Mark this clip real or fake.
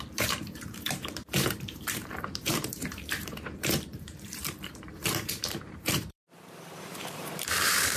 fake